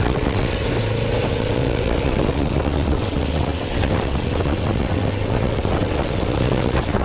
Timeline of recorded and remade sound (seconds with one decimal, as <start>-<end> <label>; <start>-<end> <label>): 0.0-0.6 remade; 0.6-1.3 recorded; 1.3-7.0 remade